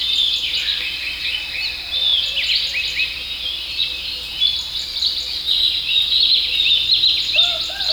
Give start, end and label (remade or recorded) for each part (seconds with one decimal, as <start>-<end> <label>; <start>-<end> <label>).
0.0-7.9 recorded